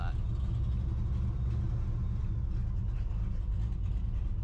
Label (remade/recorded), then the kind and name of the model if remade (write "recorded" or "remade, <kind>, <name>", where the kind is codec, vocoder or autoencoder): recorded